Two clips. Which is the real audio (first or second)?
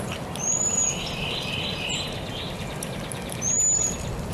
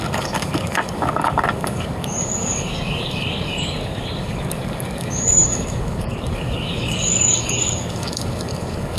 first